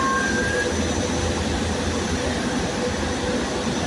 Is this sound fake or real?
real